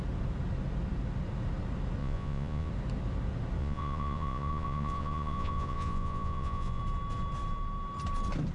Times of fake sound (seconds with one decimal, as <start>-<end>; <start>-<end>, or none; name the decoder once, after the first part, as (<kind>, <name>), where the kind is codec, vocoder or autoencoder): 2.0-2.7 (vocoder, Vocos); 3.6-6.8